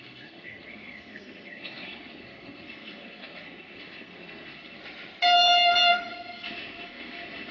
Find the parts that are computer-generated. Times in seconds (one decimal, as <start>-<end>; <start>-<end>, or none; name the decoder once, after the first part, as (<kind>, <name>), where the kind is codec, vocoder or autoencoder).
0.0-4.8 (codec, SNAC); 6.1-7.5